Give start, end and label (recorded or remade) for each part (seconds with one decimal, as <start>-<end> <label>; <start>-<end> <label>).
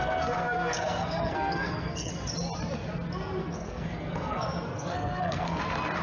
0.0-2.1 remade; 2.1-3.4 recorded; 3.4-5.6 remade; 5.6-6.0 recorded